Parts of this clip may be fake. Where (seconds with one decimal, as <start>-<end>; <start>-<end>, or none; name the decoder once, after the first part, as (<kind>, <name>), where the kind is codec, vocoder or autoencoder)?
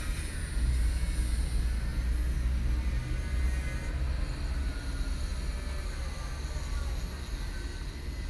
none